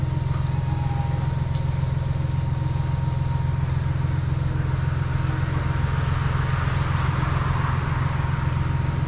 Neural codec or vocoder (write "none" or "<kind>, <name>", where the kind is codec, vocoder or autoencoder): none